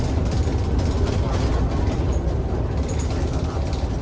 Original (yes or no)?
yes